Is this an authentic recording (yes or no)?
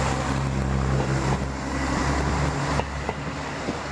yes